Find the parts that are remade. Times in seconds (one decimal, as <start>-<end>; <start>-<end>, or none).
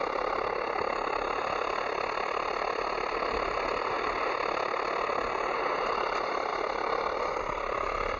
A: none